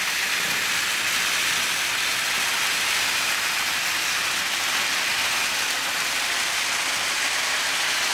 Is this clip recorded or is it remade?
recorded